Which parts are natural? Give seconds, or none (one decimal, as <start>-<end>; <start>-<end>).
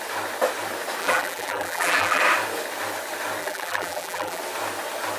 0.0-1.0; 2.2-3.4; 4.4-5.2